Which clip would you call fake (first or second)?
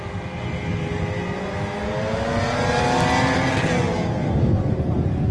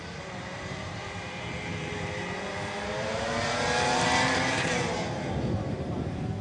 second